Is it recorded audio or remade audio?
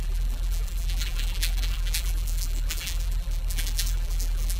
remade